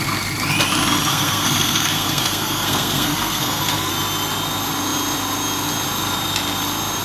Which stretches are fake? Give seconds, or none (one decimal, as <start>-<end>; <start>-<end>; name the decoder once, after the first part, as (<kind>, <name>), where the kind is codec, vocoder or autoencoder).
1.1-3.9 (codec, SNAC)